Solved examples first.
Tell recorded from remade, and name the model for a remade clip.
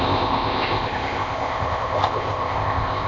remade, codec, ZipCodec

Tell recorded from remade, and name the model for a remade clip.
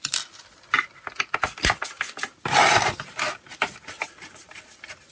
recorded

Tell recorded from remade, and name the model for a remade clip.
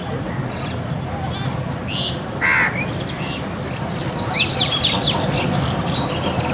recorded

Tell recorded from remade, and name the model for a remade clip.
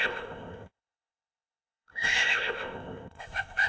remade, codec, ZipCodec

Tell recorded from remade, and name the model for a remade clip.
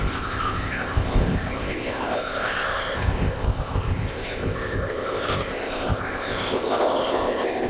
remade, codec, ZipCodec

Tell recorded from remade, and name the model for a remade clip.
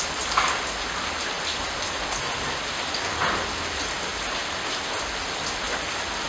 recorded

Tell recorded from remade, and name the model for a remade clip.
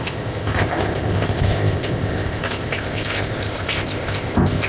remade, codec, ZipCodec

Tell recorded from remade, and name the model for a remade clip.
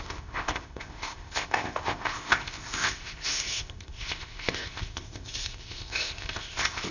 remade, codec, ZipCodec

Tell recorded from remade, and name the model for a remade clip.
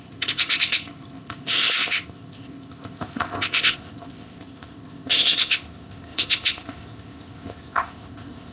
remade, codec, ZipCodec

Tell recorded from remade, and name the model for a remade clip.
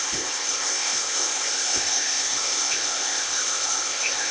remade, codec, ZipCodec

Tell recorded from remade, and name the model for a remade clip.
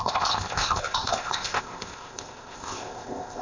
remade, codec, ZipCodec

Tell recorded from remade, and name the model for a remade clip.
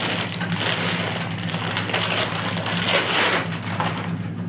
recorded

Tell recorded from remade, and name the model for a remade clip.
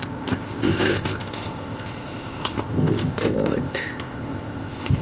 remade, codec, ZipCodec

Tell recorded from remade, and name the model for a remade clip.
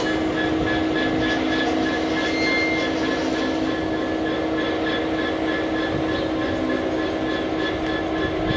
recorded